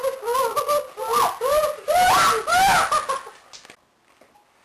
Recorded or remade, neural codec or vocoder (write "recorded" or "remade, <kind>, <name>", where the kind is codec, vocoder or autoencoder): recorded